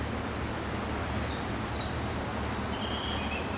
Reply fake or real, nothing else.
real